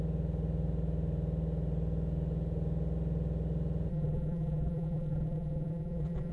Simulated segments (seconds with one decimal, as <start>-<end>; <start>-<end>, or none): 3.9-6.3